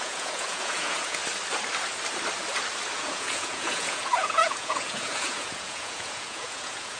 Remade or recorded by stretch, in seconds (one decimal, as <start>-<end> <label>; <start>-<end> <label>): 0.0-1.2 remade; 1.2-2.9 recorded; 2.9-7.0 remade

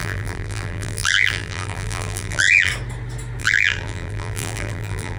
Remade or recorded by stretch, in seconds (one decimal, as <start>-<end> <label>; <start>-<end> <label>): 0.0-2.7 remade; 2.7-3.4 recorded; 3.4-5.2 remade

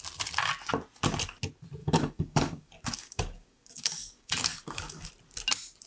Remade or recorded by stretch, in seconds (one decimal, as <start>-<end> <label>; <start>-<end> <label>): 0.0-1.8 recorded; 1.8-5.1 remade; 5.1-5.9 recorded